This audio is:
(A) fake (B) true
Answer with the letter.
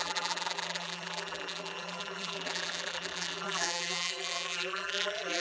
A